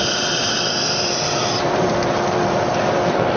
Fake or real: fake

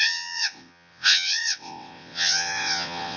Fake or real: fake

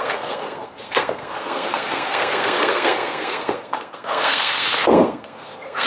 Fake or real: fake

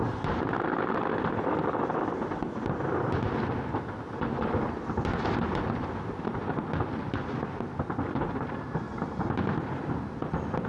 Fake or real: real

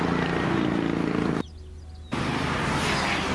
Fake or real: real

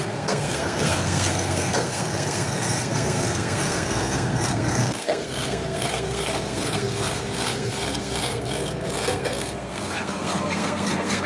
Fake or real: fake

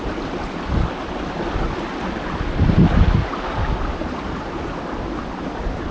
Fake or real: real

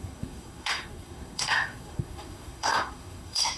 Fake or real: fake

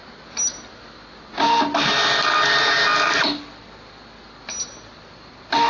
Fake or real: real